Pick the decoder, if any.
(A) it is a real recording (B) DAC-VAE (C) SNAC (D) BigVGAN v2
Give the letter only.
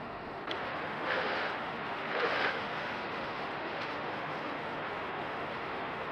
B